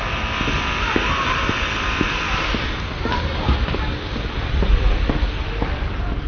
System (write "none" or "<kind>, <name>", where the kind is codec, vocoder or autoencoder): none